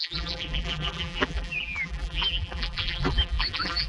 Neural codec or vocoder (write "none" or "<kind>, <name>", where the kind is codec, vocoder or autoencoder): vocoder, BigVGAN v2